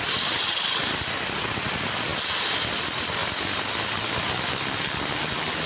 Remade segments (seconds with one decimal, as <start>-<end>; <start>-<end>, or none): none